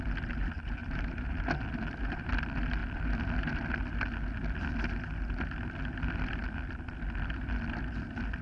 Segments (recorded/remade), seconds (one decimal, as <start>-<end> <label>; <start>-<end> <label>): 0.0-0.8 recorded; 0.8-1.4 remade; 1.4-8.4 recorded